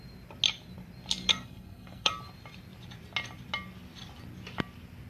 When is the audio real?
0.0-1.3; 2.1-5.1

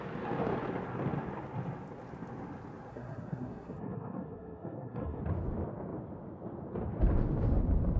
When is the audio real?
0.0-2.9; 5.2-8.0

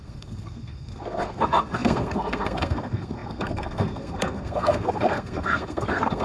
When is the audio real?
none

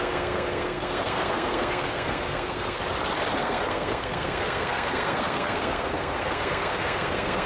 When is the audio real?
2.8-3.4

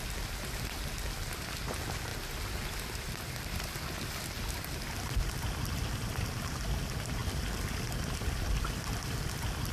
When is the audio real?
0.0-9.7

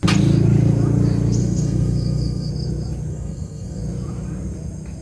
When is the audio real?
0.0-1.4; 2.5-3.1; 3.8-5.0

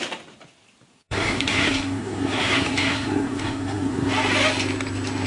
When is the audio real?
0.0-0.9; 4.1-5.3